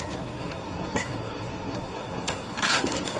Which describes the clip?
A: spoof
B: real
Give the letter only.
A